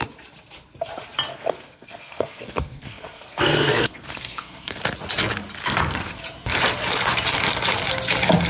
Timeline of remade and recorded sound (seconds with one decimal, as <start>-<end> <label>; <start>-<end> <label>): 0.0-1.3 recorded; 1.3-4.8 remade; 4.8-5.6 recorded; 5.6-6.2 remade; 6.2-8.5 recorded

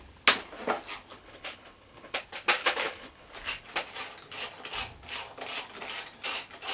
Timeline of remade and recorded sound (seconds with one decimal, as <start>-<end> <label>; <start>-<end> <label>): 0.0-1.1 recorded; 1.1-2.2 remade; 2.2-2.6 recorded; 2.6-3.3 remade; 3.3-6.7 recorded

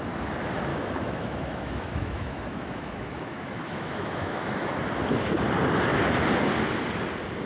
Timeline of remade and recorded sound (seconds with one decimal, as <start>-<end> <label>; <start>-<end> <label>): 0.0-0.7 recorded; 0.7-4.8 remade; 4.8-7.5 recorded

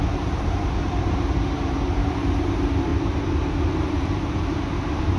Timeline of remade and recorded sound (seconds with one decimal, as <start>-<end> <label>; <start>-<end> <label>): 0.0-2.9 remade; 2.9-3.9 recorded; 3.9-5.2 remade